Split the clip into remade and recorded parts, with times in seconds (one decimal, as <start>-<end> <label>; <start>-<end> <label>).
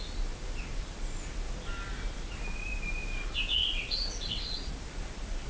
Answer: 0.0-3.6 recorded; 3.6-4.7 remade; 4.7-5.5 recorded